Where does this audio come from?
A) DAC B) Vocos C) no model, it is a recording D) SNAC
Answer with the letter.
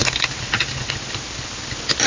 C